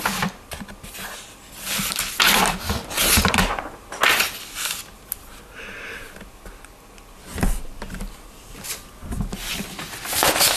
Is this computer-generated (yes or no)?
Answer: no